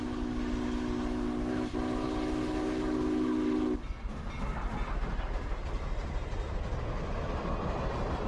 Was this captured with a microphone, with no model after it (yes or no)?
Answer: yes